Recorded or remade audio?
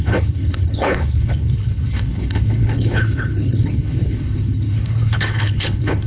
remade